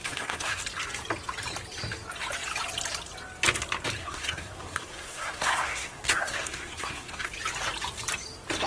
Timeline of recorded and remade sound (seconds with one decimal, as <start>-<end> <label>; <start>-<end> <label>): 0.0-0.6 remade; 0.6-4.0 recorded; 4.0-7.3 remade; 7.3-8.7 recorded